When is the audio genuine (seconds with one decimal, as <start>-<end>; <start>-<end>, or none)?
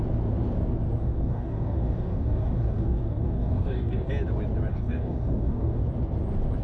0.0-1.0; 4.1-4.7; 5.8-6.6